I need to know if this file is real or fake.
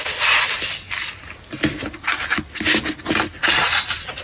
real